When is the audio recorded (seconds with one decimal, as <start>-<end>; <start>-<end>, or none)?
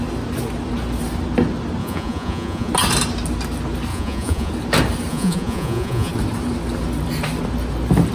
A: 0.0-1.8; 2.7-3.9; 4.5-5.1; 6.1-8.1